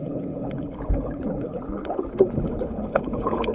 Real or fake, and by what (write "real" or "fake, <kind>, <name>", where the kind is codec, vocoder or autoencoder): fake, codec, HILCodec